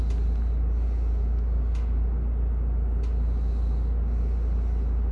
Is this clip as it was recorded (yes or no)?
yes